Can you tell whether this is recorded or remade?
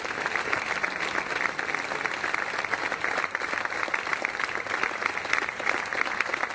recorded